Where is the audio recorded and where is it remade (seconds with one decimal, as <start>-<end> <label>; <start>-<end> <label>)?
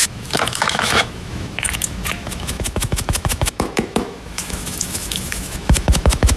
0.0-6.4 remade